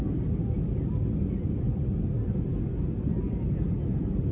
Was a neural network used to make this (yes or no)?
no